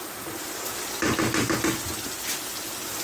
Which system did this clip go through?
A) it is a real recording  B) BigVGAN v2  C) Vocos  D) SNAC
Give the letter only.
A